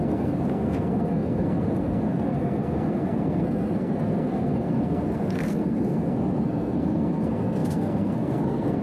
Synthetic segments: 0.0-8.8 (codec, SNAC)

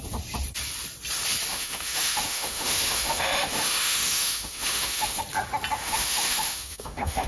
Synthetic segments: 1.5-5.2 (autoencoder, DAC-VAE); 5.8-7.3